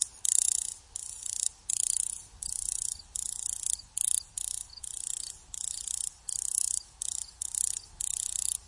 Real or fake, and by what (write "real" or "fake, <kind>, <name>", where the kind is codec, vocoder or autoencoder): real